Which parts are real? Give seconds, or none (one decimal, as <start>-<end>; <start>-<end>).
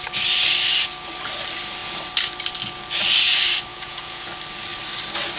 0.0-3.7; 4.3-5.4